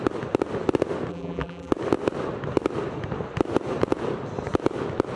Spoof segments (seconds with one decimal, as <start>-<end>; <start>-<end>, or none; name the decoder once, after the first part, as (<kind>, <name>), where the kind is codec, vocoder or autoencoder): 1.1-1.7 (vocoder, BigVGAN v2)